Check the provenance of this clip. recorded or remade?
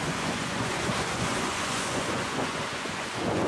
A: remade